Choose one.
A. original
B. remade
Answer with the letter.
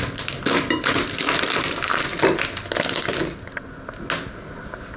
A